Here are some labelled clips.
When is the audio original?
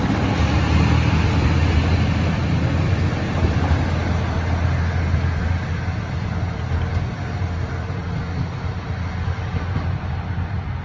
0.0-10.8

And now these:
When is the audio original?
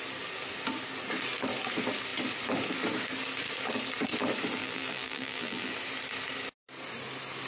0.0-4.6; 5.7-7.5